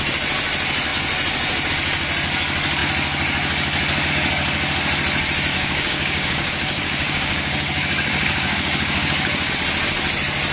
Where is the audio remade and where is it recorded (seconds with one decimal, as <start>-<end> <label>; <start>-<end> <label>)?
0.0-5.5 recorded; 5.5-9.5 remade; 9.5-10.5 recorded